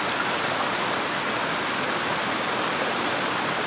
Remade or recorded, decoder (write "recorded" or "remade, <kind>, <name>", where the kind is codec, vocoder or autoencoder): recorded